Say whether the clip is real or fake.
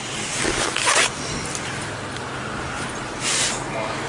real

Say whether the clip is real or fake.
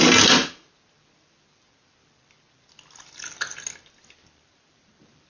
real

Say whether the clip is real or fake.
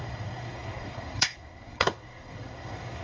fake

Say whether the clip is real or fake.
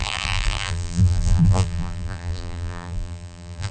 fake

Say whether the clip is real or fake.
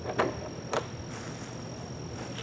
real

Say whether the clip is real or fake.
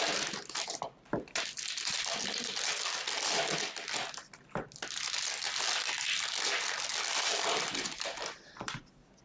real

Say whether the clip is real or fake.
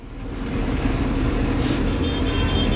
real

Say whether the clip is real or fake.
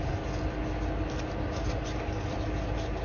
real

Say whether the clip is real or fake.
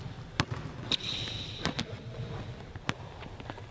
real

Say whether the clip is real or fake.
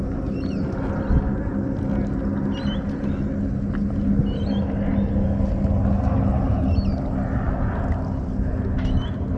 real